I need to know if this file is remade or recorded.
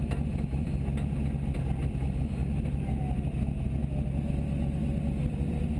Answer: recorded